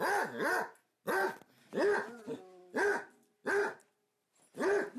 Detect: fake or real real